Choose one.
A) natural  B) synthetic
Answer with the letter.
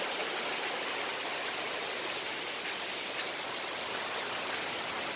A